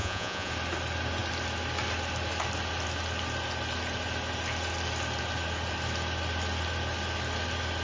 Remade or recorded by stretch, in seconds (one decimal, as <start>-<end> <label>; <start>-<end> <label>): 0.0-0.5 remade; 0.5-7.8 recorded